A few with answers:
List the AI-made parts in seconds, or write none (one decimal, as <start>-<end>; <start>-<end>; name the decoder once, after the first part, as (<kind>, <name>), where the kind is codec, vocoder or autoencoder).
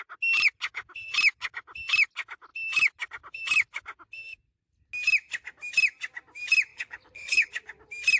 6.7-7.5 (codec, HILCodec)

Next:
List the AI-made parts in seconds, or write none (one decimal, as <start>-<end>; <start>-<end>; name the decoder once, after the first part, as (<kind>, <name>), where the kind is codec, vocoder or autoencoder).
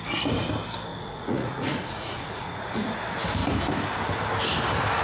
0.9-2.8 (vocoder, Vocos)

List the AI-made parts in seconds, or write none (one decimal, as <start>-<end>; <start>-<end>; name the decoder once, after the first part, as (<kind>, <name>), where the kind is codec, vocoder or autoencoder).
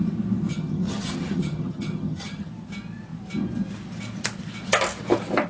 0.5-2.5 (vocoder, HiFi-GAN)